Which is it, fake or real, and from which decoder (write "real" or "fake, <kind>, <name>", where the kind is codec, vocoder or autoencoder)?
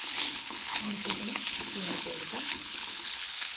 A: fake, codec, HILCodec